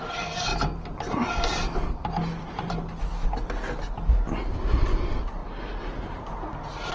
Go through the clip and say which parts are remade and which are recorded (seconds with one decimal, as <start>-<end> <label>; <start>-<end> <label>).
0.0-0.5 remade; 0.5-2.4 recorded; 2.4-3.1 remade; 3.1-4.4 recorded; 4.4-5.4 remade; 5.4-6.9 recorded

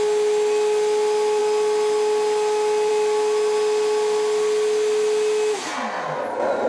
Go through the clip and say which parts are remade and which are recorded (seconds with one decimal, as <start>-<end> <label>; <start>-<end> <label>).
0.0-6.7 recorded

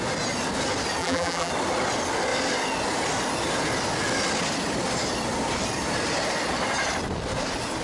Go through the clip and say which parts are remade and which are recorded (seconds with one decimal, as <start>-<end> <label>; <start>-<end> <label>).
0.0-1.0 recorded; 1.0-1.5 remade; 1.5-7.8 recorded

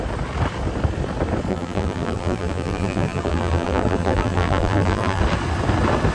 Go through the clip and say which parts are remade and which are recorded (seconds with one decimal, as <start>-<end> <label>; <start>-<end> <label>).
0.0-1.5 recorded; 1.5-5.2 remade; 5.2-6.1 recorded